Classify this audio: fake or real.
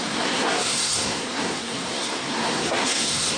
fake